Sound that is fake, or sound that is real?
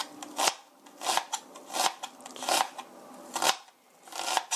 real